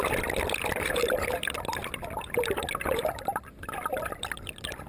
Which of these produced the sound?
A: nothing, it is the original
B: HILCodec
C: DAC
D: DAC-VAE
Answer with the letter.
A